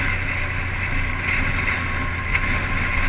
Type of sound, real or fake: real